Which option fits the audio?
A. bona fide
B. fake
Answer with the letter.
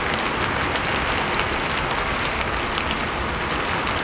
A